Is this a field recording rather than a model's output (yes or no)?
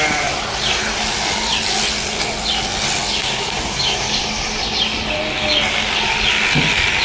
yes